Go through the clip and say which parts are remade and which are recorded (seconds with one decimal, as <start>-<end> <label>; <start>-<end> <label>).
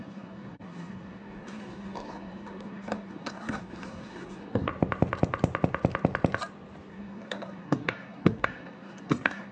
0.0-4.7 remade; 4.7-6.9 recorded; 6.9-9.5 remade